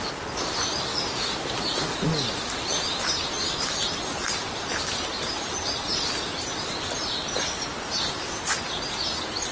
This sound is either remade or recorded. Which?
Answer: recorded